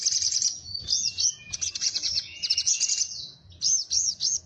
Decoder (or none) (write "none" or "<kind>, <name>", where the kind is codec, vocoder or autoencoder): vocoder, Vocos